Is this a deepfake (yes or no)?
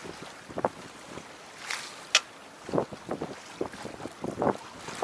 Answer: no